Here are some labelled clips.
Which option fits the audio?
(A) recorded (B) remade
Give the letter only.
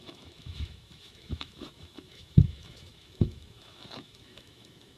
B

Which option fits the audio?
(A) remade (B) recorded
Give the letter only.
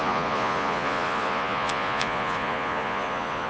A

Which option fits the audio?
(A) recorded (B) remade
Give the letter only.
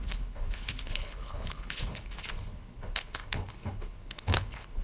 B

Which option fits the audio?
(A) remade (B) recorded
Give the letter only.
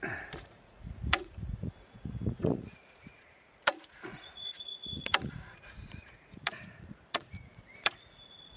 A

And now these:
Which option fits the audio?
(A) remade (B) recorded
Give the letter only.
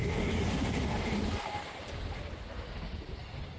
B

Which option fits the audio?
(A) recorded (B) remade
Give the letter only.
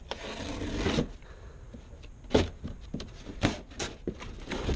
A